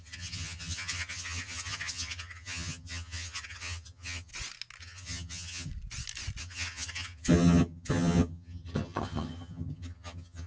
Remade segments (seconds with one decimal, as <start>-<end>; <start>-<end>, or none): 0.0-4.3; 4.8-5.7; 6.4-10.5